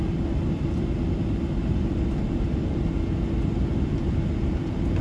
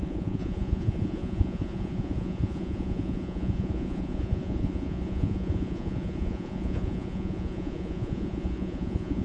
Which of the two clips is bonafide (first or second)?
first